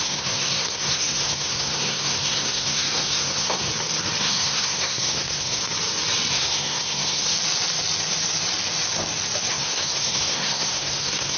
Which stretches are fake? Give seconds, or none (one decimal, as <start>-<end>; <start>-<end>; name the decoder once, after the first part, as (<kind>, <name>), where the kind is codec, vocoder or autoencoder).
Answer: 0.0-3.7 (codec, SNAC); 4.2-5.6; 6.3-7.3; 9.5-11.4